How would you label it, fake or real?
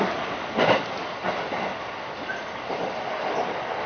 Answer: real